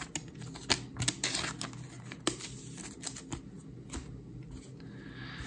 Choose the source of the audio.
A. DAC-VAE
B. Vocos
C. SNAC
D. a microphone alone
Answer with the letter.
D